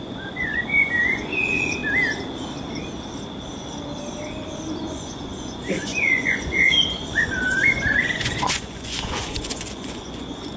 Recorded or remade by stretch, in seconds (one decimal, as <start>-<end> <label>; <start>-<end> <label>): 0.0-1.8 remade; 1.8-4.7 recorded; 4.7-10.6 remade